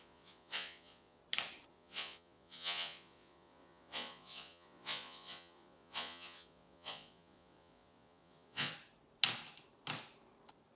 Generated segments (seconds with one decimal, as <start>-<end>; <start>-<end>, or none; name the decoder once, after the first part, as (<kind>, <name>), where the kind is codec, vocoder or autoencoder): 0.0-1.2 (vocoder, Vocos); 1.7-8.7